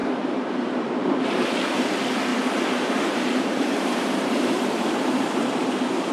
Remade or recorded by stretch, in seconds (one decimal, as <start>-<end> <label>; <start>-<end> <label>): 0.0-1.3 remade; 1.3-2.3 recorded; 2.3-6.1 remade